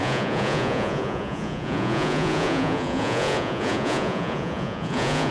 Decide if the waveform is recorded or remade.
remade